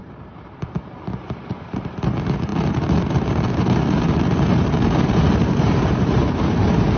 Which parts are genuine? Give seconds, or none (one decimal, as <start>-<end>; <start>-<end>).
none